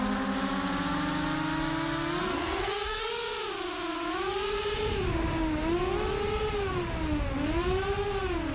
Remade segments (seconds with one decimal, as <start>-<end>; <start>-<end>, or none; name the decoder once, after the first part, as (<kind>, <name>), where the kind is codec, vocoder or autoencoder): 2.2-3.1 (codec, SNAC)